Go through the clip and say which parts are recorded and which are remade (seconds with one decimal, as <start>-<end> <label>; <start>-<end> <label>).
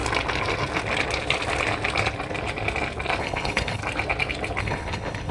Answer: 0.0-3.2 recorded; 3.2-3.8 remade; 3.8-4.6 recorded; 4.6-5.3 remade